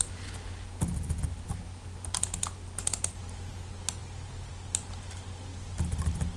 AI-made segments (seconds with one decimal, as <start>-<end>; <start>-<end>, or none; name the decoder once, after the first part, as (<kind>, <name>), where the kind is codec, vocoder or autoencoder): none